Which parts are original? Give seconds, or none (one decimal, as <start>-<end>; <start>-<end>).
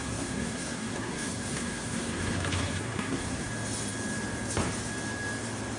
3.5-5.8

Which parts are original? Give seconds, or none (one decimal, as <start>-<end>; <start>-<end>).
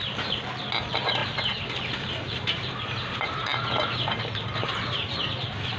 0.0-1.2; 4.7-5.8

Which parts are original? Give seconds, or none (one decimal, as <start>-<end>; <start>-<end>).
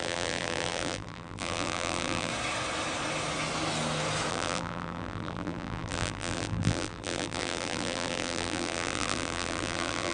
2.3-4.3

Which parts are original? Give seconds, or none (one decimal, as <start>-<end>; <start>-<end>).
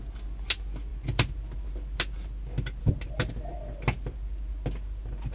0.0-5.3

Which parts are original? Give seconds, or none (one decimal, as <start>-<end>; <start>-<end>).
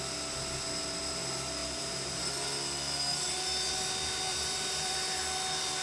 0.0-1.6; 2.2-4.3; 5.2-5.8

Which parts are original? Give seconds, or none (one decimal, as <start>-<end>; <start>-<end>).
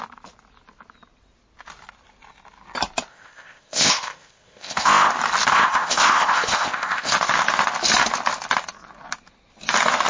0.0-3.1; 5.1-5.5; 7.1-10.1